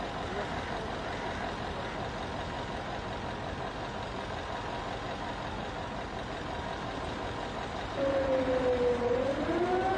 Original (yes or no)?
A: yes